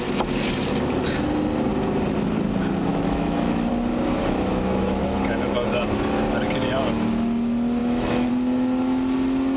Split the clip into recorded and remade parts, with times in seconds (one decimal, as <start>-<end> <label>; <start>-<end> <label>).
0.0-2.9 recorded; 2.9-3.7 remade; 3.7-4.2 recorded; 4.2-5.0 remade; 5.0-7.8 recorded; 7.8-8.3 remade; 8.3-9.6 recorded